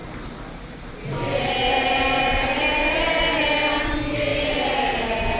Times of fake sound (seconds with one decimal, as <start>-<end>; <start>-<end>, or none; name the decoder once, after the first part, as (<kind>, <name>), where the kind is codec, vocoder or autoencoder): 0.0-3.2 (vocoder, BigVGAN v2); 4.3-5.4